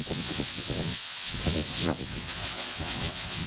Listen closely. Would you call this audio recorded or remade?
remade